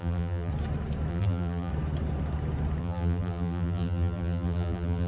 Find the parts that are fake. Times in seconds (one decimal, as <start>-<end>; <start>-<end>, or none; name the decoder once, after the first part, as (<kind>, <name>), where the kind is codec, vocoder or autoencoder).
0.0-0.5 (vocoder, BigVGAN v2); 1.1-1.7; 2.8-5.1